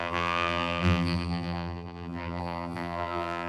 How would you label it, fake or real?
fake